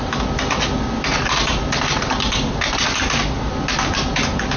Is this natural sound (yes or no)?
yes